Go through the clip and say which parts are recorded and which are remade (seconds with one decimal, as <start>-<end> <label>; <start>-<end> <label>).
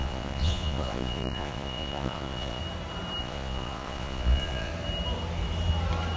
0.0-2.6 remade; 2.6-3.2 recorded; 3.2-4.7 remade; 4.7-6.2 recorded